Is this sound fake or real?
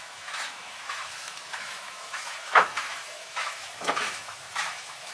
fake